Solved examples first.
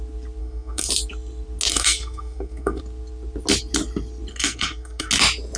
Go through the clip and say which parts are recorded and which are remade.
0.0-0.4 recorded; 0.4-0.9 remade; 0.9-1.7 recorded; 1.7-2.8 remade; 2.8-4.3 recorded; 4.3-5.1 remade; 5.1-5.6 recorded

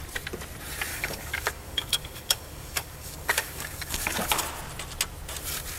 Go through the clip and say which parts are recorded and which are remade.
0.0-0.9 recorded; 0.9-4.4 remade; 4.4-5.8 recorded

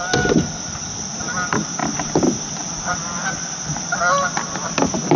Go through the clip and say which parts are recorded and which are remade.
0.0-5.2 recorded

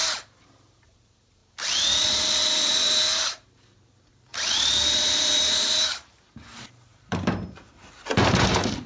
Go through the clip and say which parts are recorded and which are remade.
0.0-1.4 remade; 1.4-2.0 recorded; 2.0-8.9 remade

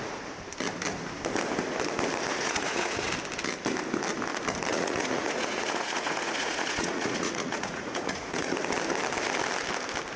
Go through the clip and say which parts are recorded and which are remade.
0.0-2.3 recorded; 2.3-3.1 remade; 3.1-4.7 recorded; 4.7-8.5 remade; 8.5-10.2 recorded